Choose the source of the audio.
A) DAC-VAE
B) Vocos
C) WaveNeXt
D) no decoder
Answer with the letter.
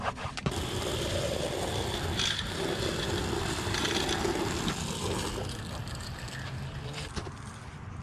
D